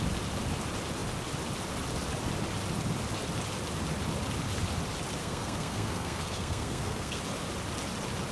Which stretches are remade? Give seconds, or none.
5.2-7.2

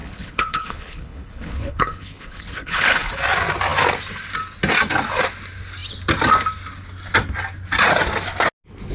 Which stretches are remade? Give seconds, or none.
0.0-3.1

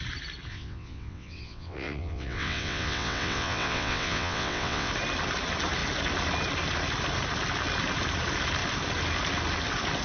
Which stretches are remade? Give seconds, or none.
0.5-4.9

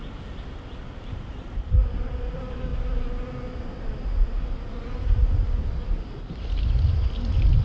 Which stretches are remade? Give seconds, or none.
none

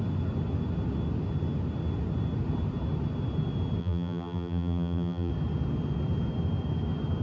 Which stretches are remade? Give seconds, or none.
3.8-5.3